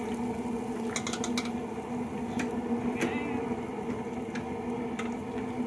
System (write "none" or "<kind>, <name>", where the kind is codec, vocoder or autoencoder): none